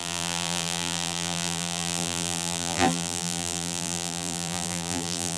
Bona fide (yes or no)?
no